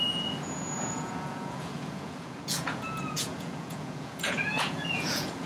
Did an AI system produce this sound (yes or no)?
yes